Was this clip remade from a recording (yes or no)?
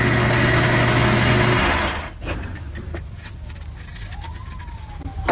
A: no